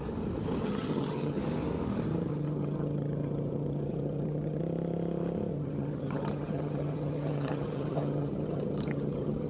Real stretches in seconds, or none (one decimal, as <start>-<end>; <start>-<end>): 0.0-0.6; 1.4-2.3; 4.6-5.5